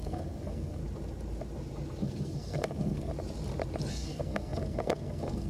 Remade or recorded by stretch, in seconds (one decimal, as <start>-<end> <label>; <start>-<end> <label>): 0.0-0.8 remade; 0.8-2.0 recorded; 2.0-3.1 remade; 3.1-3.9 recorded; 3.9-5.5 remade